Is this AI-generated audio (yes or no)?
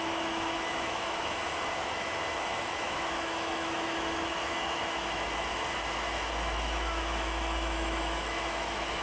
yes